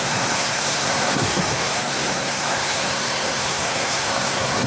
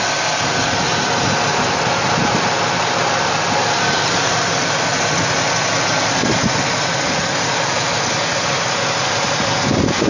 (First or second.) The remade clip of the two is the first